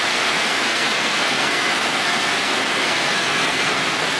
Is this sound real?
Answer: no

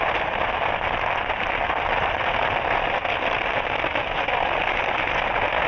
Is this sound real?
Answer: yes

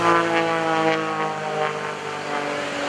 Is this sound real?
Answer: yes